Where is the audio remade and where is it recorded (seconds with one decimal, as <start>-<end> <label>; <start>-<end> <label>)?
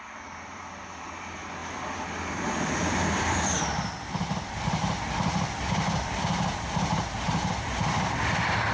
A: 0.0-4.8 remade; 4.8-5.3 recorded; 5.3-8.7 remade